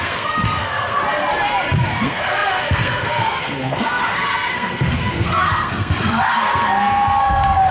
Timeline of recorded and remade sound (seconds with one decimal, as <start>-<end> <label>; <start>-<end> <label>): 0.0-1.0 remade; 1.0-1.9 recorded; 1.9-7.7 remade